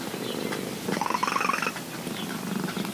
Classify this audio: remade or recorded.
recorded